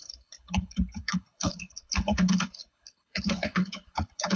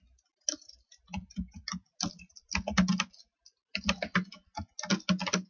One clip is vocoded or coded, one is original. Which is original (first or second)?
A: second